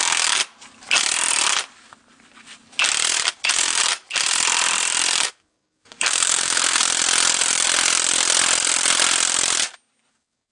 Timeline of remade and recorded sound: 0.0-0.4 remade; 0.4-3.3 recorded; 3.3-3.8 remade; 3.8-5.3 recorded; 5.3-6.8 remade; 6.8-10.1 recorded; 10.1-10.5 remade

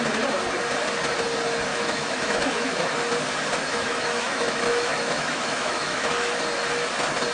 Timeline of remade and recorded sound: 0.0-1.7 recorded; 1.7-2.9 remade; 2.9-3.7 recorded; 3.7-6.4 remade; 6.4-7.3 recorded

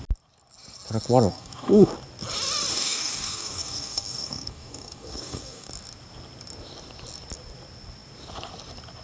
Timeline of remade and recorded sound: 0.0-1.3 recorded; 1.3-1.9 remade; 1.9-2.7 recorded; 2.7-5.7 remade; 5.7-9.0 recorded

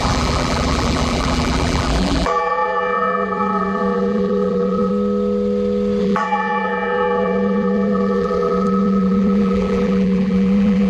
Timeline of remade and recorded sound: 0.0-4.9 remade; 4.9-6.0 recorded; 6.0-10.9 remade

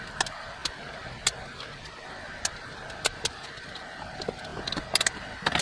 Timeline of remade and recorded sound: 0.0-5.6 recorded

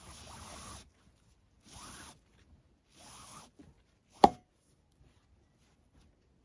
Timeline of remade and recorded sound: 0.0-6.4 recorded

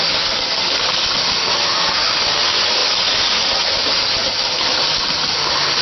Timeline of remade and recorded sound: 0.0-1.6 recorded; 1.6-2.1 remade; 2.1-5.8 recorded